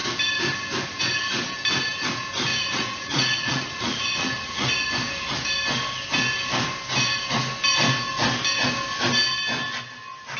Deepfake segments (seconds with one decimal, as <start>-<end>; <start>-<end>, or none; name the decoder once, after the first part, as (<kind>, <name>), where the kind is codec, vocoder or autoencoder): 2.5-4.7 (vocoder, Vocos)